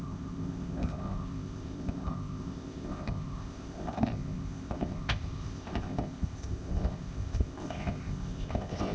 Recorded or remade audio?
remade